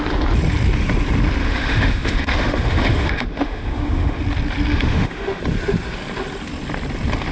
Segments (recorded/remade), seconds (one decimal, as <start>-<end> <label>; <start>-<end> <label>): 0.0-1.4 recorded; 1.4-4.2 remade; 4.2-4.7 recorded; 4.7-5.4 remade; 5.4-7.3 recorded